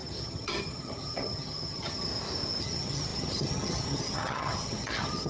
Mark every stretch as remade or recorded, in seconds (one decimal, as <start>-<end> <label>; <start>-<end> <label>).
0.0-2.1 remade; 2.1-2.6 recorded; 2.6-5.3 remade

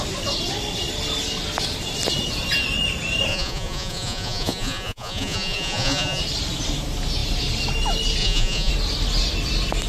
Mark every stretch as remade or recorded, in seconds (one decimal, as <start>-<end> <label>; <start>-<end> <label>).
0.0-3.3 recorded; 3.3-6.2 remade; 6.2-8.2 recorded; 8.2-8.7 remade; 8.7-9.9 recorded